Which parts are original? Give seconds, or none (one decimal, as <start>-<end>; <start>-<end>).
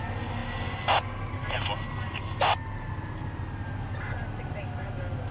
0.0-5.3